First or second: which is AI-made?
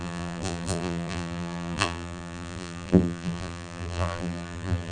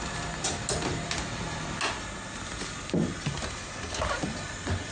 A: first